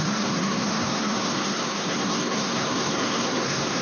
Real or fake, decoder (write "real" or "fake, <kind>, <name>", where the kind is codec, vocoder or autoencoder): fake, codec, SNAC